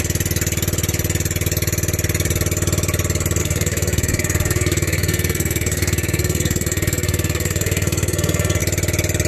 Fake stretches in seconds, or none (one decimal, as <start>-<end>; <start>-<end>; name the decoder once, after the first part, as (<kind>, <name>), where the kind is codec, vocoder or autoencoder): 3.4-8.6 (codec, SNAC)